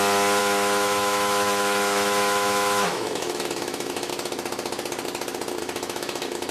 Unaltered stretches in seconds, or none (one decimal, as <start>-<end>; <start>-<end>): 0.0-0.4; 4.1-5.6